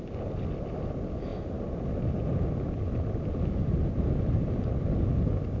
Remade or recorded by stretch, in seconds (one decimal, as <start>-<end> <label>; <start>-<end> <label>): 0.0-5.6 recorded